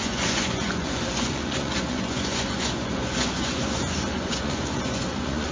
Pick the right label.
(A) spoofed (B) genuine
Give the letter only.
A